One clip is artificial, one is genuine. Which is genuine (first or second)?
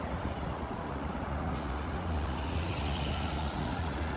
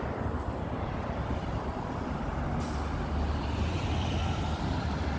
second